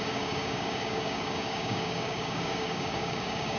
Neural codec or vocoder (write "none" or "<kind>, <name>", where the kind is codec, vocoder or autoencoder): codec, DAC